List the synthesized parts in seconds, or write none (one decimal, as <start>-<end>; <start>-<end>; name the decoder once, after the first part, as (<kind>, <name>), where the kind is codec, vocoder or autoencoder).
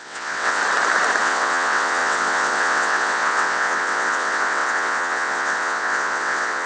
0.0-0.6 (vocoder, WaveNeXt); 1.2-6.7